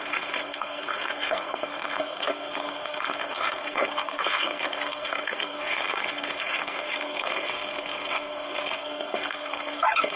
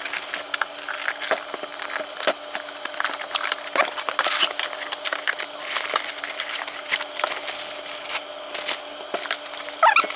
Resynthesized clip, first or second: first